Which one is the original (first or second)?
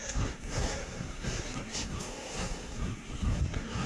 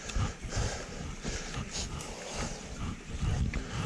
second